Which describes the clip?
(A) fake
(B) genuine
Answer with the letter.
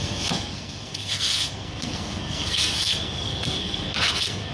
A